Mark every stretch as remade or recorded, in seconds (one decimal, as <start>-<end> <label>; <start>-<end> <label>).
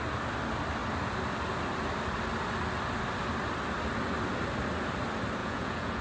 0.0-5.4 recorded; 5.4-6.0 remade